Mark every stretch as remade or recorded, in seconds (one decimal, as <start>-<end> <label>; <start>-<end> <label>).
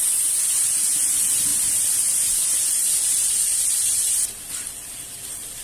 0.0-5.6 recorded